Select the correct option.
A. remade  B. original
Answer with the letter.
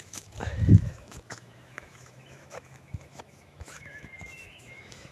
A